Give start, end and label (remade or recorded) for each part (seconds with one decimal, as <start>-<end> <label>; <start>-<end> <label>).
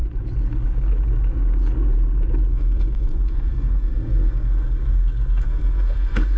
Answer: 0.0-2.5 recorded; 2.5-6.4 remade